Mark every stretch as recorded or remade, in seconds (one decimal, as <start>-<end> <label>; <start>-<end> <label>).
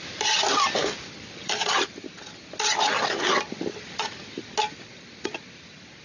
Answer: 0.0-6.0 recorded